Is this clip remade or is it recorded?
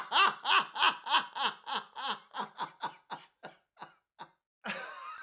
recorded